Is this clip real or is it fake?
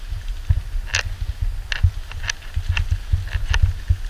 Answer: real